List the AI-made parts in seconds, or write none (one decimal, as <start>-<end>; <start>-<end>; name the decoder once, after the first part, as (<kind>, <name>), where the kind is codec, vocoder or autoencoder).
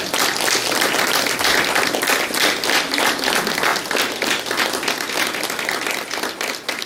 none